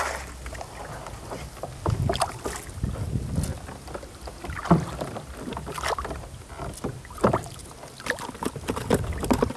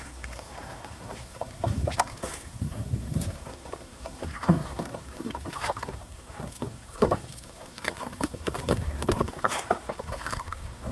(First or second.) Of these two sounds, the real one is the first